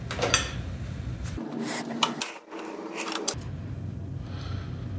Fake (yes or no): no